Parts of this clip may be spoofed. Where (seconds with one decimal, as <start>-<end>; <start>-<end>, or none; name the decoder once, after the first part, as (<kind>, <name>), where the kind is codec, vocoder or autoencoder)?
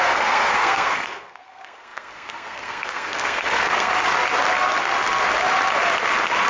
0.0-3.9 (codec, SNAC)